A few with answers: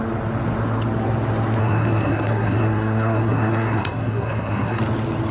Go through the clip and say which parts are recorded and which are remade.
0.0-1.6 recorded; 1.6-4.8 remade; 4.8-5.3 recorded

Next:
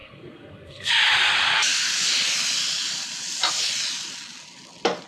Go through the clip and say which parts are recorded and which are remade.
0.0-0.9 remade; 0.9-5.1 recorded

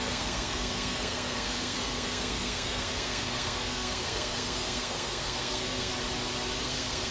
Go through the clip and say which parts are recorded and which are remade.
0.0-5.9 remade; 5.9-6.6 recorded; 6.6-7.1 remade